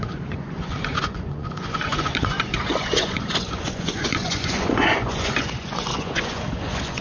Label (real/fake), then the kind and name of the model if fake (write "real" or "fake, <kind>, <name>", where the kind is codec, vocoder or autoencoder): fake, vocoder, Vocos